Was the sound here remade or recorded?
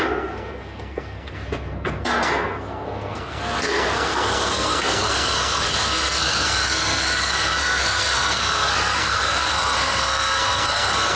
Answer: remade